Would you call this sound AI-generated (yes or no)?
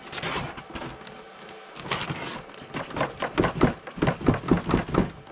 no